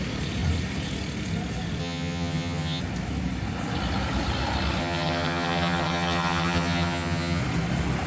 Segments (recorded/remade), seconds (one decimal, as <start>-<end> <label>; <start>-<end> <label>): 0.0-1.8 recorded; 1.8-2.8 remade; 2.8-4.8 recorded; 4.8-7.4 remade; 7.4-8.1 recorded